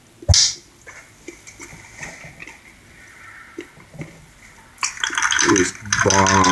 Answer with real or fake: real